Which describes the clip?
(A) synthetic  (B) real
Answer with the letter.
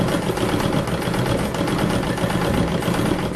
B